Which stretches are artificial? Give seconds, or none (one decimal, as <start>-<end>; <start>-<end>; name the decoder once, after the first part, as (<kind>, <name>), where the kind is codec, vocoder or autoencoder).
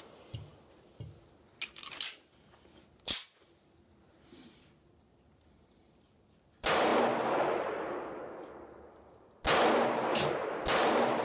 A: 0.0-0.5 (vocoder, BigVGAN v2); 3.4-6.9; 10.1-11.2